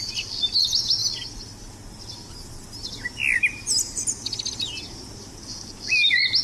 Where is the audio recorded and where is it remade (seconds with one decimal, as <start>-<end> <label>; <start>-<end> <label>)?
0.0-6.4 recorded